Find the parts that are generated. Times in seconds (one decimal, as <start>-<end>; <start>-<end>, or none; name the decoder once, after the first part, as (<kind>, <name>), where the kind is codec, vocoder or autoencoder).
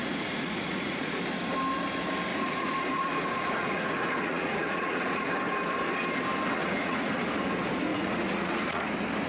0.0-1.2 (vocoder, Vocos); 2.3-5.3; 6.6-7.2; 7.9-8.8